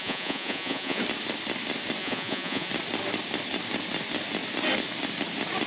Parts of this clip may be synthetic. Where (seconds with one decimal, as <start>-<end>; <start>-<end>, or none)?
0.0-1.0; 2.0-2.7